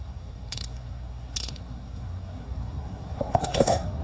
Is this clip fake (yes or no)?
yes